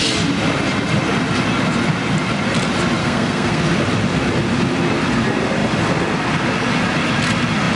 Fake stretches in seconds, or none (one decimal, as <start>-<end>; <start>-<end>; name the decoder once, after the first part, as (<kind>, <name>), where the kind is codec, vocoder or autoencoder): 3.0-3.6 (codec, SNAC)